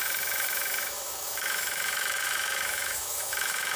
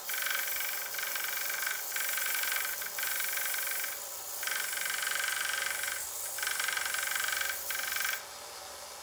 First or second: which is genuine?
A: second